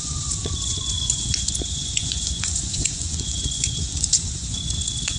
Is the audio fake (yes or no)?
yes